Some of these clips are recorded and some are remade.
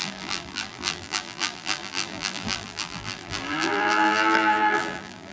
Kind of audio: remade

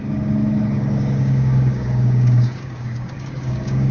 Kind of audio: remade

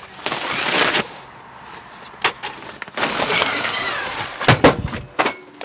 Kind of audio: recorded